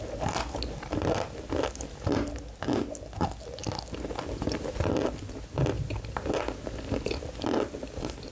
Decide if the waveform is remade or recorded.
recorded